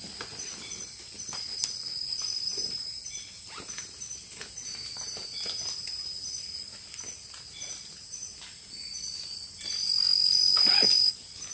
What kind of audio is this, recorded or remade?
recorded